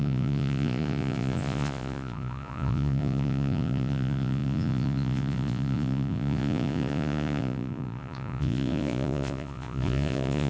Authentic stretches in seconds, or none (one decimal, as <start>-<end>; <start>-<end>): none